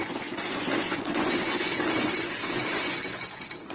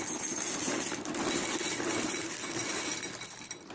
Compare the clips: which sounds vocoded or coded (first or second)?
first